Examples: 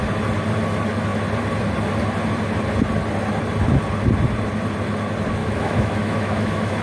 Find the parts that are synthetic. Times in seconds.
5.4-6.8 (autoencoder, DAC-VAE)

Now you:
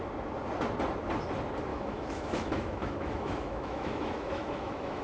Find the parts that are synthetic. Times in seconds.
1.7-5.0 (autoencoder, DAC-VAE)

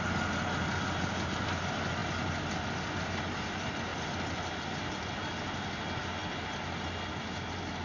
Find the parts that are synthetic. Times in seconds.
none

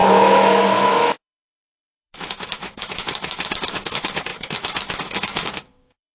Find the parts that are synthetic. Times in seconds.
0.0-6.1 (autoencoder, DAC-VAE)

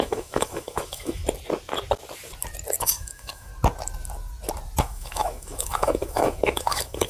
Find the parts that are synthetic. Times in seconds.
0.0-1.2 (autoencoder, DAC-VAE); 2.8-3.5; 4.8-7.1

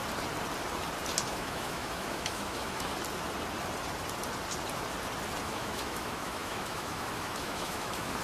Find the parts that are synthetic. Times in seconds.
1.3-2.9 (autoencoder, DAC-VAE); 5.4-8.2

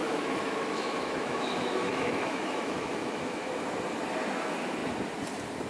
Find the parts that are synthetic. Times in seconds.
0.0-3.4 (autoencoder, DAC-VAE)

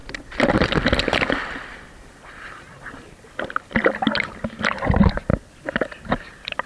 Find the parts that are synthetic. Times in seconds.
none